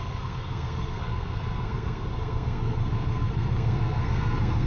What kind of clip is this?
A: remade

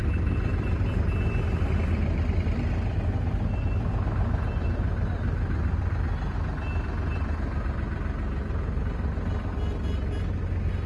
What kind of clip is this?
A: recorded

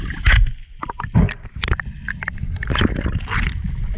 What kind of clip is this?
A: recorded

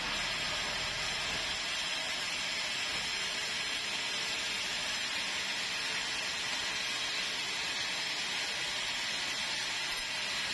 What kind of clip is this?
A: recorded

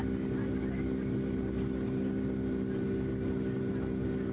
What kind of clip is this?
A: recorded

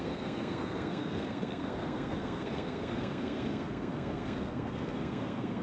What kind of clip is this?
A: remade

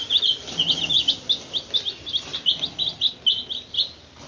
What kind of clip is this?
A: recorded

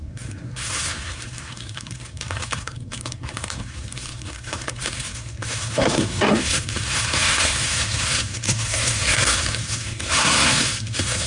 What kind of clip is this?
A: remade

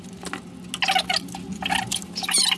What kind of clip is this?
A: recorded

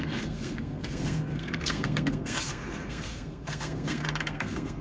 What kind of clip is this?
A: remade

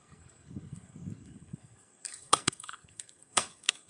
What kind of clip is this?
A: remade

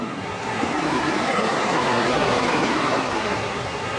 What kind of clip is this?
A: remade